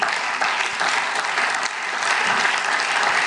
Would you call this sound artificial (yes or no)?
no